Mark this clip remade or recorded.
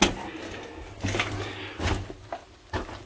recorded